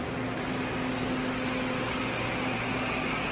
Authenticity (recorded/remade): recorded